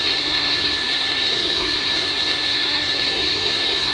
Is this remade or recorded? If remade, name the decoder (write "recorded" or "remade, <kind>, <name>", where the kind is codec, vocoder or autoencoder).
remade, codec, SNAC